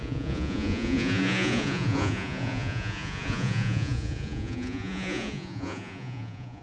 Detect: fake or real fake